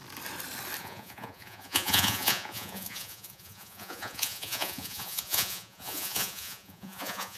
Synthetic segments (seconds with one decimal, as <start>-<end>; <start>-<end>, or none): 0.8-7.4